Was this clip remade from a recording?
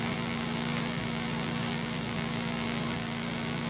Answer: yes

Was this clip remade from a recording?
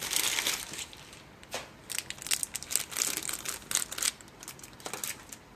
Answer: no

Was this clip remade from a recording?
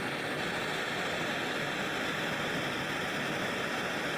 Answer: yes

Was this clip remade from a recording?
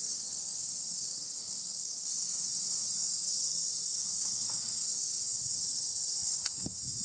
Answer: yes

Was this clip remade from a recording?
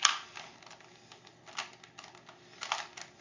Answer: no